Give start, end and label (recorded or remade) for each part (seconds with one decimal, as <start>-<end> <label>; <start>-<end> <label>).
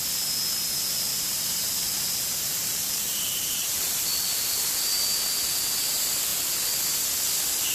0.0-1.1 recorded; 1.1-4.3 remade; 4.3-7.7 recorded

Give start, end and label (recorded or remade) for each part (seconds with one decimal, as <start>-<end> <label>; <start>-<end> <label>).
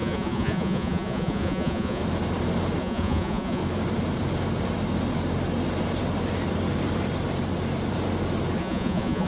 0.0-2.0 remade; 2.0-2.8 recorded; 2.8-3.6 remade; 3.6-8.6 recorded; 8.6-9.3 remade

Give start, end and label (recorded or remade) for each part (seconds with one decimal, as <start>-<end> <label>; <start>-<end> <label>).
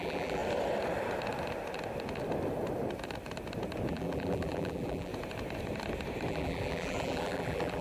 0.0-0.4 remade; 0.4-3.9 recorded; 3.9-5.1 remade; 5.1-6.3 recorded; 6.3-7.8 remade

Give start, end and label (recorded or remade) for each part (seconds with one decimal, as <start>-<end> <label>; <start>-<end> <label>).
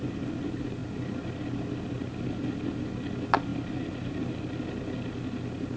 0.0-5.8 recorded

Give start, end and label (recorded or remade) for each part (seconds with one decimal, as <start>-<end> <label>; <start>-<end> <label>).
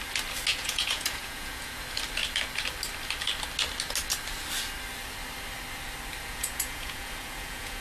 0.0-0.5 recorded; 0.5-1.8 remade; 1.8-6.3 recorded; 6.3-7.8 remade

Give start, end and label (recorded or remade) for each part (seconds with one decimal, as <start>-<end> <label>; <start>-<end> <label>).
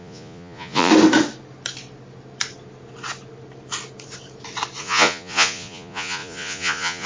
0.0-0.9 remade; 0.9-4.8 recorded; 4.8-7.1 remade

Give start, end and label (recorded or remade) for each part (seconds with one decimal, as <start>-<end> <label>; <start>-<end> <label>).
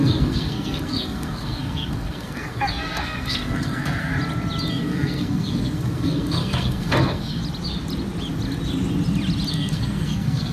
0.0-4.1 remade; 4.1-4.7 recorded; 4.7-7.4 remade; 7.4-9.5 recorded; 9.5-10.5 remade